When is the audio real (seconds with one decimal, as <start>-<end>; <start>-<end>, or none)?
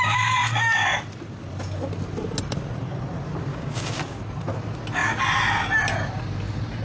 0.0-3.5; 4.2-6.8